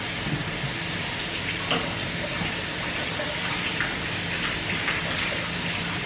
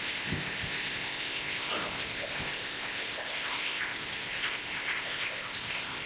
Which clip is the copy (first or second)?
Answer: second